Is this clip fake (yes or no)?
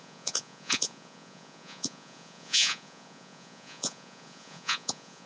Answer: yes